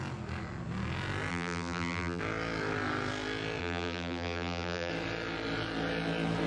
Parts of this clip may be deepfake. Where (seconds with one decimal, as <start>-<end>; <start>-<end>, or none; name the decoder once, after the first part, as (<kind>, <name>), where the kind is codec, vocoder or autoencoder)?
1.3-2.2 (vocoder, BigVGAN v2); 3.6-4.9